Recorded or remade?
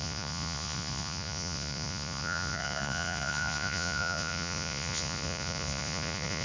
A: remade